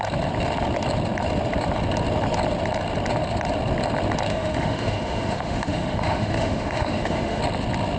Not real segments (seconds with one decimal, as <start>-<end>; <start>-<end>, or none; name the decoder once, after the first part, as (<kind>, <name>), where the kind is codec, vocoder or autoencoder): 4.3-7.4 (autoencoder, DAC-VAE)